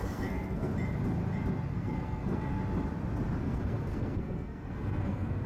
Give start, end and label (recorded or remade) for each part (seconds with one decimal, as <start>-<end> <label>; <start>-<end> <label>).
0.0-0.7 remade; 0.7-1.7 recorded; 1.7-2.6 remade; 2.6-3.4 recorded; 3.4-5.5 remade